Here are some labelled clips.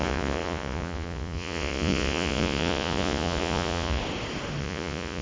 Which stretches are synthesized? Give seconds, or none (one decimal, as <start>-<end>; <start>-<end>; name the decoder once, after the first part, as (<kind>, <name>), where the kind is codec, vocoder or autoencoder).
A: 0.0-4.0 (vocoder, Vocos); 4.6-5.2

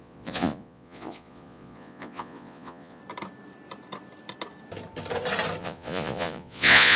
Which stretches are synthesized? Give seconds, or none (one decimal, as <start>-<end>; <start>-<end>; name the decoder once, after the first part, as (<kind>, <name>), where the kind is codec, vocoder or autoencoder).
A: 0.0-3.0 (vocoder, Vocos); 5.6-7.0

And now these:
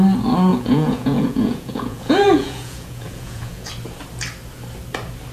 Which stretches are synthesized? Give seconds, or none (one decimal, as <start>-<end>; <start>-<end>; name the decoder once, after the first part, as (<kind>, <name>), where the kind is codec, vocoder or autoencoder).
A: 0.5-3.7 (vocoder, Vocos)